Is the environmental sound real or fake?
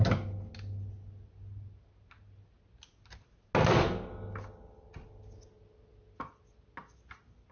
real